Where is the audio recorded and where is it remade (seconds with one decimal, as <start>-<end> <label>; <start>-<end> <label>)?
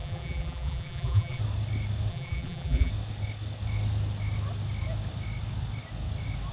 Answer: 0.0-1.4 remade; 1.4-2.1 recorded; 2.1-2.9 remade; 2.9-6.5 recorded